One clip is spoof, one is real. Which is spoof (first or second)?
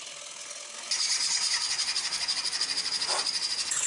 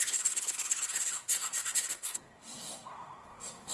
second